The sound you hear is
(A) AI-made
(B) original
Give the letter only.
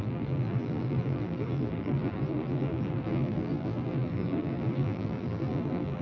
A